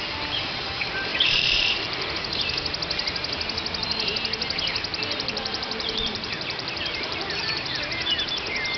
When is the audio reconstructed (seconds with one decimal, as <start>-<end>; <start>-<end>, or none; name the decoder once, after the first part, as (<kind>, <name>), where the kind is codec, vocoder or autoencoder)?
1.1-2.1 (vocoder, BigVGAN v2); 4.9-7.8